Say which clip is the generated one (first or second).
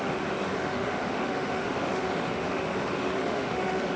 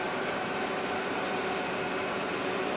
first